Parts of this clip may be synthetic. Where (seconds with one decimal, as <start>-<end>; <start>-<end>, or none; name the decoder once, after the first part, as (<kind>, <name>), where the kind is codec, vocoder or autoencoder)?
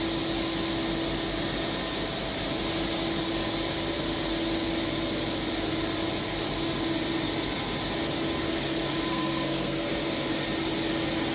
9.1-9.9 (codec, SNAC)